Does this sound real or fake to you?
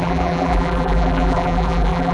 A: fake